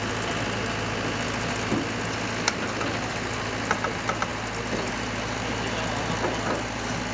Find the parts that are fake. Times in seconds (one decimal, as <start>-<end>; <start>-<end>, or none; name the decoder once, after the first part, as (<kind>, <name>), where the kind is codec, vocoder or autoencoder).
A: none